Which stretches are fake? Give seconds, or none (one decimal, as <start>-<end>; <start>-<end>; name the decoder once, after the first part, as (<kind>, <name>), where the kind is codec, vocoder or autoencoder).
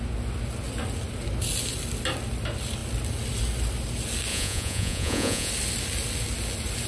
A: 4.3-5.5 (vocoder, Vocos)